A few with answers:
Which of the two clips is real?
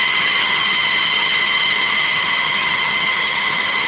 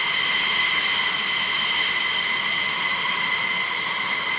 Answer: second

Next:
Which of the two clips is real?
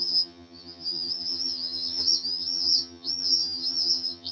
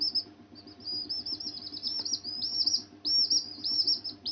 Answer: second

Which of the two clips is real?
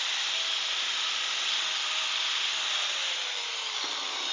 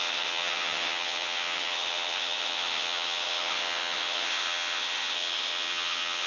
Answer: first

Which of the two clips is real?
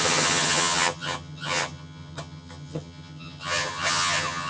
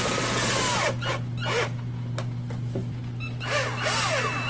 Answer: second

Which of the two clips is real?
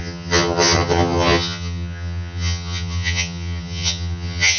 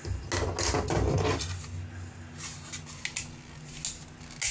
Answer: second